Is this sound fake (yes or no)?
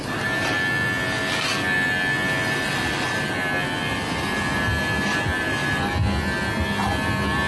no